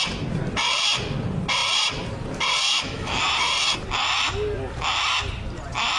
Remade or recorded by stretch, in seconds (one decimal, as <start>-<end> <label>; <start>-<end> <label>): 0.0-2.7 recorded; 2.7-3.2 remade; 3.2-6.0 recorded